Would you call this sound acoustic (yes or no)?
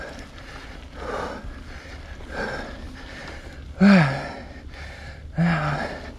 yes